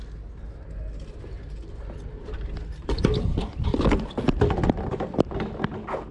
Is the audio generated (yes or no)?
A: no